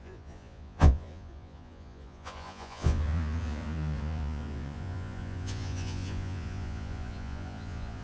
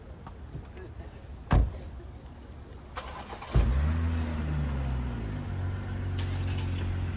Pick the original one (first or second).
second